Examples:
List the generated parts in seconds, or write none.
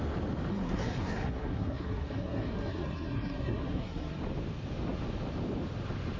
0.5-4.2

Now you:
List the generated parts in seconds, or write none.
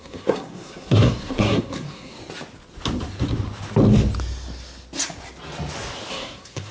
0.0-2.2; 6.1-6.7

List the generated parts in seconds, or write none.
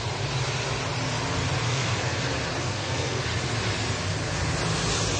1.7-2.2; 2.6-3.2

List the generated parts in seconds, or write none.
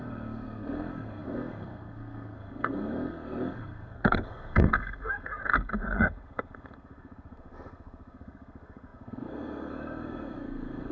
0.0-10.9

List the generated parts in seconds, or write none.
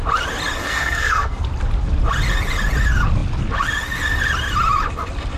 0.6-1.4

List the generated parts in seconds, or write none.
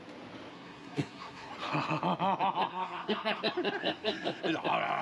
0.5-1.5; 2.7-3.4; 3.8-4.4